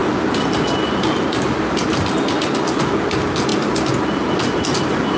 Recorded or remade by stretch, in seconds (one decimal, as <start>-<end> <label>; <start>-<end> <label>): 0.0-5.2 recorded